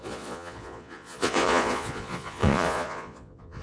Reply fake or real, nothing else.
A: fake